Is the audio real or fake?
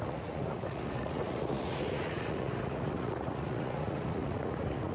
fake